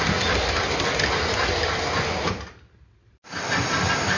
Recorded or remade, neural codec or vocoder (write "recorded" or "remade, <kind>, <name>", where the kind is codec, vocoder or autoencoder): recorded